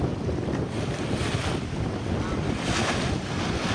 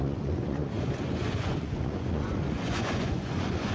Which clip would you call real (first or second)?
first